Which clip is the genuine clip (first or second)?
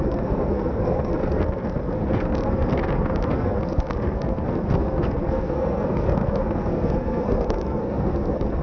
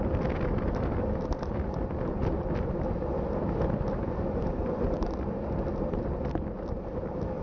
second